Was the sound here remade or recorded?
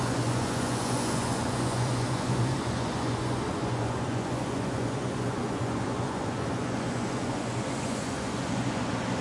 remade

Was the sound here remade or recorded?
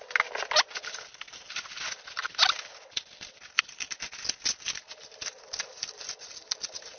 recorded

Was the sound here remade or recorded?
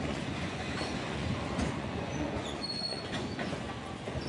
remade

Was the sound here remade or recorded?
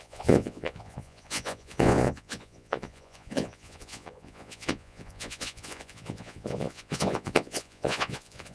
remade